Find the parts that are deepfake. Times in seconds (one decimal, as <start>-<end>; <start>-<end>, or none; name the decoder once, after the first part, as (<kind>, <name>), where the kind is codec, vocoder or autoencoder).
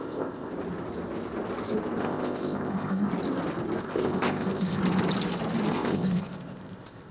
0.0-0.5 (codec, ZipCodec); 2.0-3.1; 3.8-4.8; 5.7-7.1